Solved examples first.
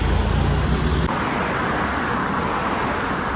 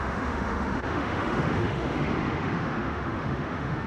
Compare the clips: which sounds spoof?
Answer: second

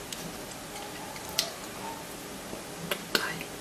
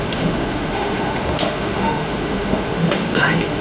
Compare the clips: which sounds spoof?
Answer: second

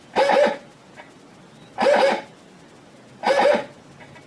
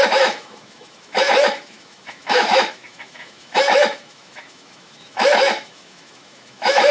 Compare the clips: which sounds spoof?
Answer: second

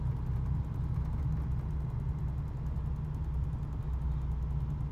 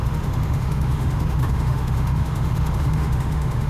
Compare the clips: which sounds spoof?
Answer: second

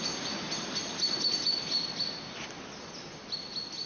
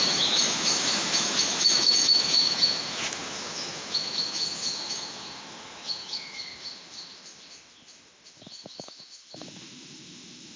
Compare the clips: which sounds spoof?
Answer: second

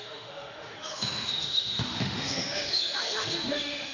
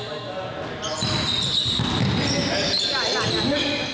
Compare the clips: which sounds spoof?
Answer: first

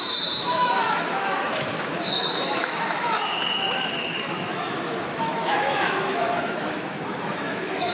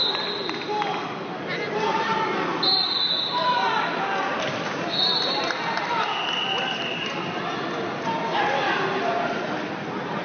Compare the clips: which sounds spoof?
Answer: first